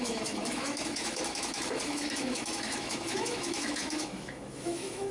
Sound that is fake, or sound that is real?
fake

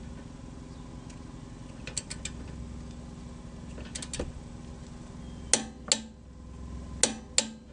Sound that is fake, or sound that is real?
real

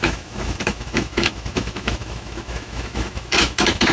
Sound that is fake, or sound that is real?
fake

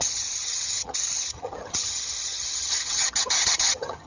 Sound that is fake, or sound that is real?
fake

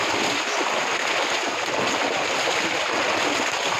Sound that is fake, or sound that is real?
real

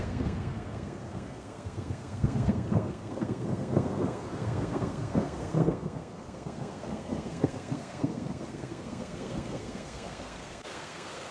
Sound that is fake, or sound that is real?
fake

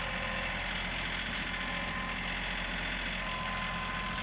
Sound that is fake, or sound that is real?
real